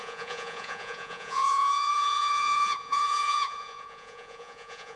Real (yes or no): no